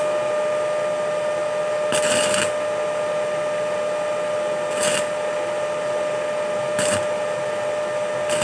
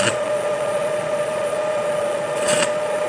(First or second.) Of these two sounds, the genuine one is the first